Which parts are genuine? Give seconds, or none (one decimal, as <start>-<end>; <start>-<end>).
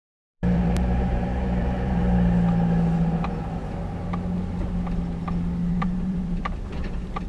2.0-5.7